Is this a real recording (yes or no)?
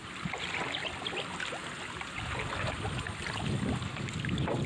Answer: yes